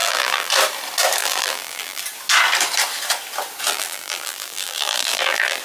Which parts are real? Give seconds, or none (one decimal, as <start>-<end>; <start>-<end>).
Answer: 0.5-1.2; 2.0-3.7